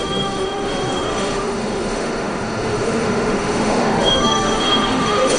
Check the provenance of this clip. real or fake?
fake